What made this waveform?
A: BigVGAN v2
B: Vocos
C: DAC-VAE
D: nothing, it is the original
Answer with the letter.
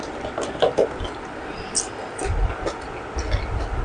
D